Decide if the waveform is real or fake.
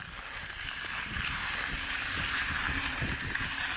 real